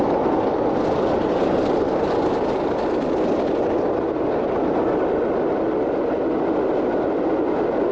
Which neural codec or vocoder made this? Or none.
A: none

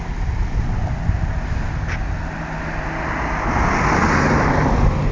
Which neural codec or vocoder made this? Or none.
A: none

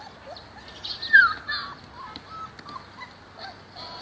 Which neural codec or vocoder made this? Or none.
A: none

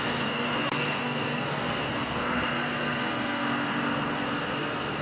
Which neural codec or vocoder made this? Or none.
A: codec, SNAC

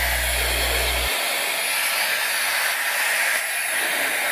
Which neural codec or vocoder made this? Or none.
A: none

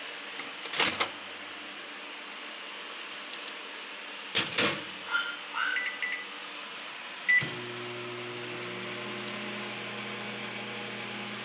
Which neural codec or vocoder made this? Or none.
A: none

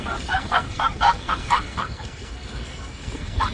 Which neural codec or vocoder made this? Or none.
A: codec, SNAC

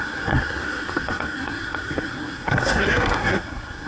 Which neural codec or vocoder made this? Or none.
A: codec, SNAC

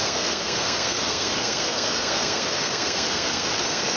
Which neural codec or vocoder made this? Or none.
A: codec, SNAC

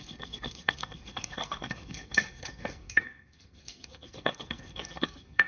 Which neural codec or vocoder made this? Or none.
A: codec, SNAC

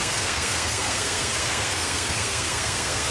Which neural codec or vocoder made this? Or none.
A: codec, SNAC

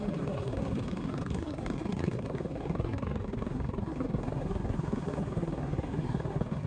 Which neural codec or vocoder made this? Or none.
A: codec, SNAC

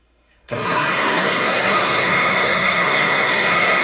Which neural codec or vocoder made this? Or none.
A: codec, SNAC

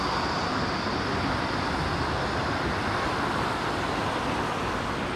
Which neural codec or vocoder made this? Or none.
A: none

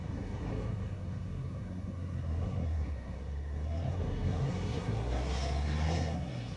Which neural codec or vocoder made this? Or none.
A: codec, SNAC